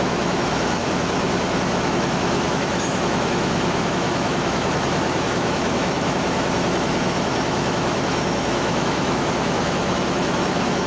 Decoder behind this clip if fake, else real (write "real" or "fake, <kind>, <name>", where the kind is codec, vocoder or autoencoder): fake, autoencoder, DAC-VAE